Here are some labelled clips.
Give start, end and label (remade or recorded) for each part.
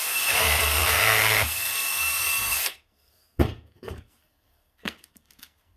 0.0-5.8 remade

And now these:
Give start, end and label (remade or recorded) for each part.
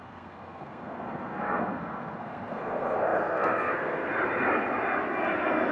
0.0-4.1 remade; 4.1-5.7 recorded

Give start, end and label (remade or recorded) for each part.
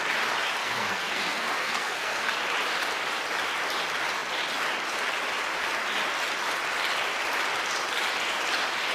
0.0-0.6 recorded; 0.6-2.4 remade; 2.4-8.9 recorded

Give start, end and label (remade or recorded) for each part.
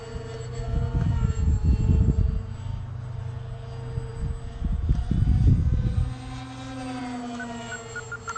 0.0-8.4 recorded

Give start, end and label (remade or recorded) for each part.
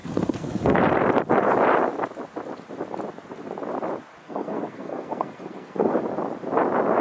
0.0-0.8 remade; 0.8-4.2 recorded; 4.2-6.0 remade; 6.0-7.0 recorded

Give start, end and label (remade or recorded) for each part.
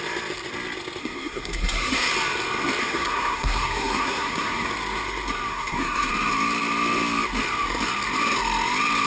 0.0-1.0 recorded; 1.0-2.1 remade; 2.1-2.8 recorded; 2.8-4.7 remade; 4.7-5.5 recorded; 5.5-6.1 remade; 6.1-9.1 recorded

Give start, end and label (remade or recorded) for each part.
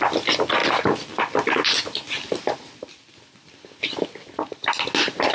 0.0-5.3 recorded